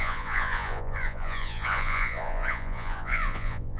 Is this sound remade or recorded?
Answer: remade